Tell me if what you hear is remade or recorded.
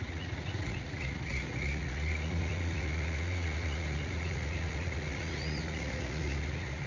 remade